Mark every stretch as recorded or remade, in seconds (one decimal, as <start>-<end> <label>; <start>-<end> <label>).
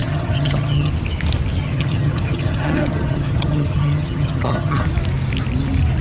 0.0-0.9 remade; 0.9-1.6 recorded; 1.6-4.8 remade; 4.8-6.0 recorded